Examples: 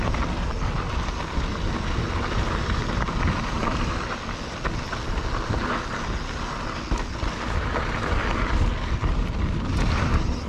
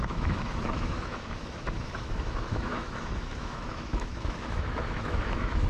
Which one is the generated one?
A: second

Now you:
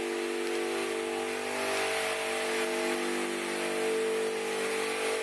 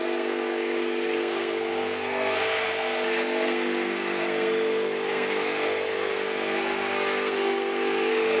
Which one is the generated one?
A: second